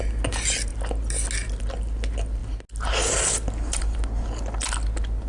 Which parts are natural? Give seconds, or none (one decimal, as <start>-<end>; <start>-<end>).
0.0-5.3